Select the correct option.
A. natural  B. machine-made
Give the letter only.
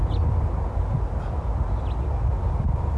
A